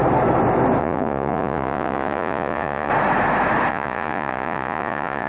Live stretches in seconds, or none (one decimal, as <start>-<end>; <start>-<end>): 0.0-0.8; 2.9-3.7